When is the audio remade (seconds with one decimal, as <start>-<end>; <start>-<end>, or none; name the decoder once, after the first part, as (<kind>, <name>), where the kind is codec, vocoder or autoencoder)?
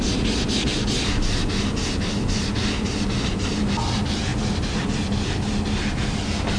none